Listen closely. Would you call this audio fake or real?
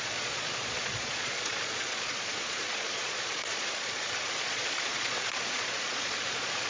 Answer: fake